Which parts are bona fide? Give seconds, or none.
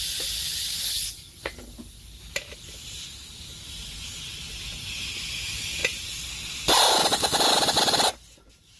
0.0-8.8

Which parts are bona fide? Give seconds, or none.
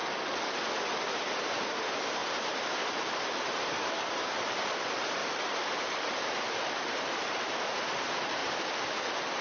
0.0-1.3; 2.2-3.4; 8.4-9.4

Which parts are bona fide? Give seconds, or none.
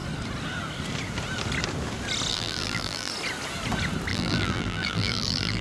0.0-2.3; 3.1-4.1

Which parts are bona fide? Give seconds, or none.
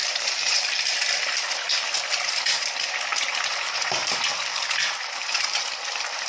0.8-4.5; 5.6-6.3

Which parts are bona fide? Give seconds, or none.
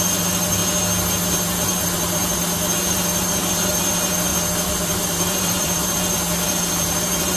0.6-1.3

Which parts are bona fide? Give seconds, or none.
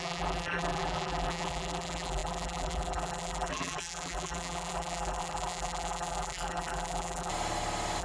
7.3-8.0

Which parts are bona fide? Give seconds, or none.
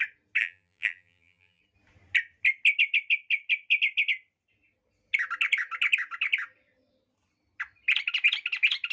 0.0-0.4; 1.6-8.9